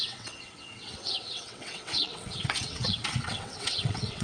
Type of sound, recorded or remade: remade